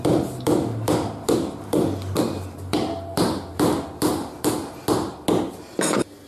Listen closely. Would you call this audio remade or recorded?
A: recorded